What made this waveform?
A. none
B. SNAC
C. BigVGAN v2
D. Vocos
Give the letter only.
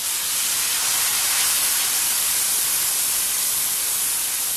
A